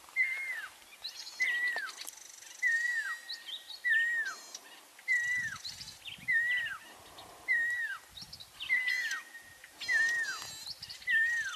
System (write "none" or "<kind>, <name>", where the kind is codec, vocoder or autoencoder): none